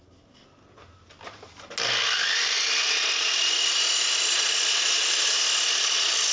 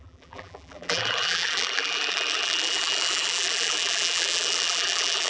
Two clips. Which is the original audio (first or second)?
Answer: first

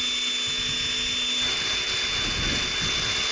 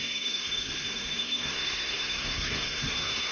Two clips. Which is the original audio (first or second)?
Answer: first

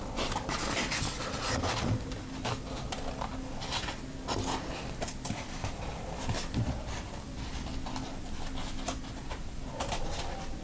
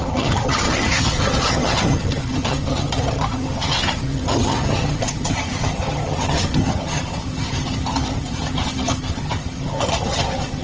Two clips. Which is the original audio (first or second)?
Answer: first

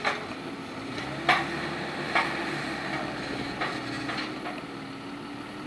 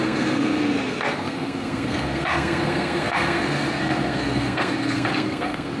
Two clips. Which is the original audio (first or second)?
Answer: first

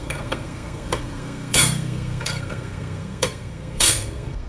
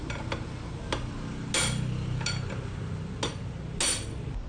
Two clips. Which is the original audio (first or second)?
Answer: second